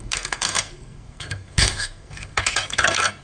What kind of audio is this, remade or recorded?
remade